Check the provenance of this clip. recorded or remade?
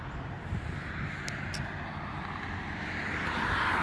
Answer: recorded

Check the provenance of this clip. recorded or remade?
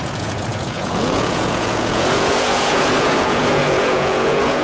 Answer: remade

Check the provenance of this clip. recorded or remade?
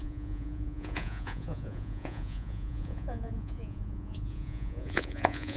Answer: remade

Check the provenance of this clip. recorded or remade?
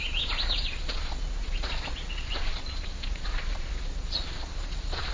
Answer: remade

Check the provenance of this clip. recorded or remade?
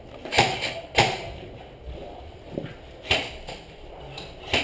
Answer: recorded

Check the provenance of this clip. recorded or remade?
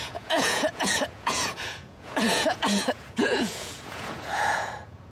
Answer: remade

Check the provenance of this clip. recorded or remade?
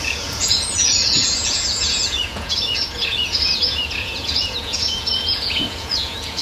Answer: remade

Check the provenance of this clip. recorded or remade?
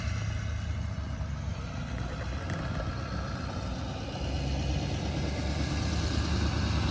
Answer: recorded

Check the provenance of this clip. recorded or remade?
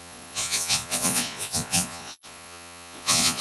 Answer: remade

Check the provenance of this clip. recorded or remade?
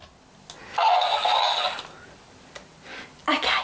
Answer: recorded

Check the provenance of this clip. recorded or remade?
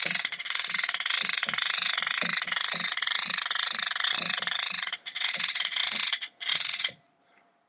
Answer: remade